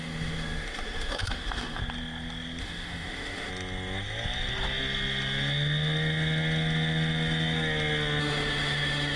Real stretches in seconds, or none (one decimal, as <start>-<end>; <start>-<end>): 1.8-2.6; 3.5-8.2